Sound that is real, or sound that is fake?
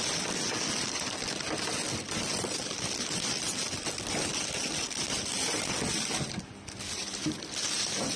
real